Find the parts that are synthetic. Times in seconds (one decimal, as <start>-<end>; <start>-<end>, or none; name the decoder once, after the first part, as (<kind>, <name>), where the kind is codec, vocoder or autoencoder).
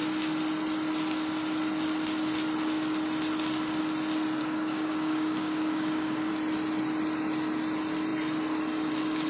4.4-6.3 (codec, DAC)